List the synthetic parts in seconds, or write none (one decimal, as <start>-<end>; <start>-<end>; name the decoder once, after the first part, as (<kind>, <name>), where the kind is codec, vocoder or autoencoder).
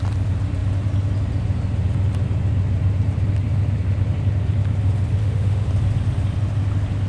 5.2-5.7 (autoencoder, DAC-VAE)